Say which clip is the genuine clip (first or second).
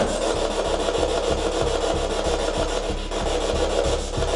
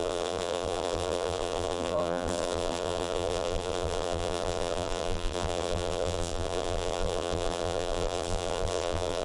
first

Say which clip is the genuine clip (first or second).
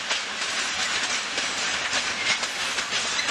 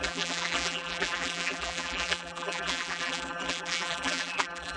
first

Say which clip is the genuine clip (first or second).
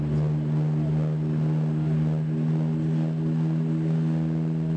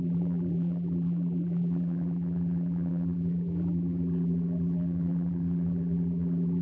first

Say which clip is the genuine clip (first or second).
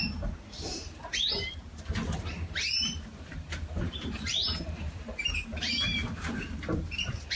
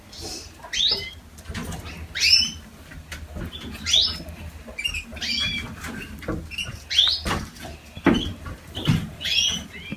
second